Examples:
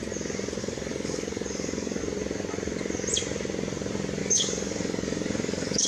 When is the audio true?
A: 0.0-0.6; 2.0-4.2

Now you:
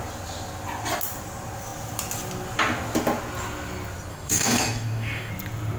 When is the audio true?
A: 0.0-4.1; 5.3-5.8